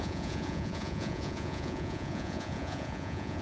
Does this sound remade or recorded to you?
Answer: remade